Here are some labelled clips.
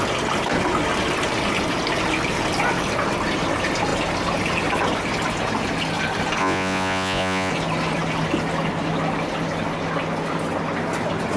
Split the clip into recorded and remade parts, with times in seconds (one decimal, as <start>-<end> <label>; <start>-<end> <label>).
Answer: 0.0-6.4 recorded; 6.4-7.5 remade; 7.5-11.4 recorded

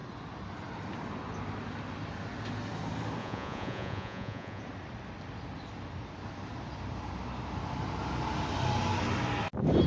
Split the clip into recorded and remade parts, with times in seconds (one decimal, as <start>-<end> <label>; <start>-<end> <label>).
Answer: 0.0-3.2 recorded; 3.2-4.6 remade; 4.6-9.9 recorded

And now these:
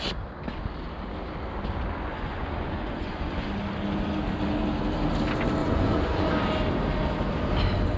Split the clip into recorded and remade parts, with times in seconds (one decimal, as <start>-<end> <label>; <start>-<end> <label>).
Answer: 0.0-2.1 recorded; 2.1-3.5 remade; 3.5-5.6 recorded; 5.6-6.3 remade; 6.3-8.0 recorded